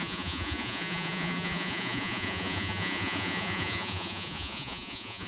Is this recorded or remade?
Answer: remade